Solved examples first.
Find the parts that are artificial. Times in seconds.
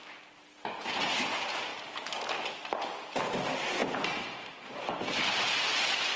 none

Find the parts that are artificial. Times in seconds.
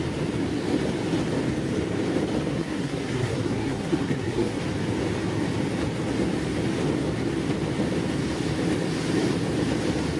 2.5-4.6 (codec, SNAC)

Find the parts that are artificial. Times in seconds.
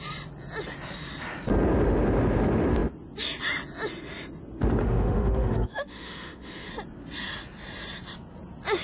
4.8-6.7 (autoencoder, DAC-VAE)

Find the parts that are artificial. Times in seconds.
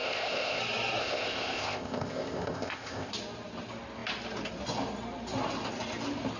0.0-0.6 (codec, ZipCodec); 1.0-3.1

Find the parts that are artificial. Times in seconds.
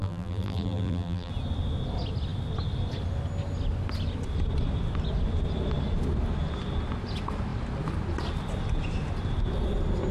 0.0-1.3 (vocoder, BigVGAN v2)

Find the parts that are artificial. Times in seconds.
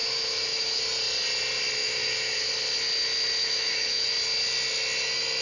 0.0-0.8 (autoencoder, DAC-VAE); 1.8-2.5; 3.4-4.1